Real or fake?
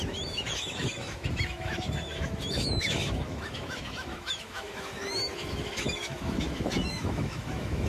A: fake